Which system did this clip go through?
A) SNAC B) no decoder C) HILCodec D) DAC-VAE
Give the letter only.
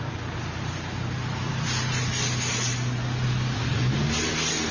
B